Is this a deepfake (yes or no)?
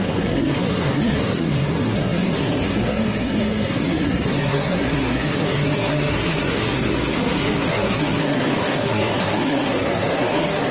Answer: yes